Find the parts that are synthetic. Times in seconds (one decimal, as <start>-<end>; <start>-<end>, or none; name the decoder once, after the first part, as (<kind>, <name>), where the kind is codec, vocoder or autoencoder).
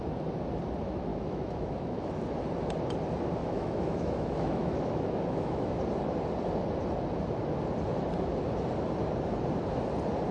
1.1-2.1 (autoencoder, DAC-VAE); 3.4-5.8